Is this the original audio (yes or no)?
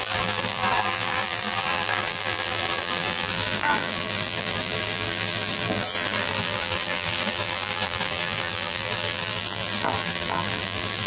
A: no